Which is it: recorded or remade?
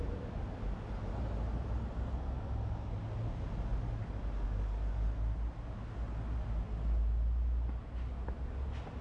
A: recorded